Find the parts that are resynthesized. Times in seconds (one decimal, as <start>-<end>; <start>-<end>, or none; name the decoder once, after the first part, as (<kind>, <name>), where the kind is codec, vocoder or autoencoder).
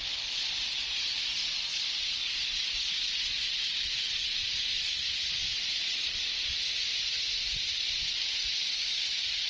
none